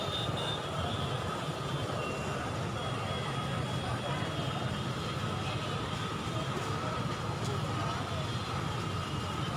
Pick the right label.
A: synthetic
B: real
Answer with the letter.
A